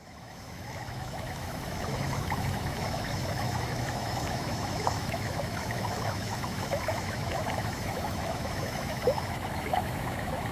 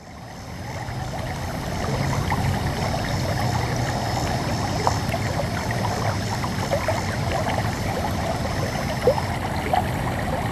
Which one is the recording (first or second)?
second